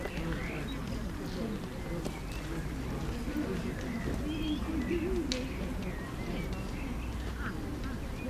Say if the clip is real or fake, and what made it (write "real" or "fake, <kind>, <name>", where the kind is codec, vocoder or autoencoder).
real